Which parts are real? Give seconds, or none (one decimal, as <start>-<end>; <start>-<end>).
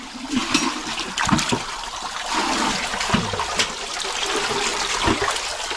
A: 0.0-5.8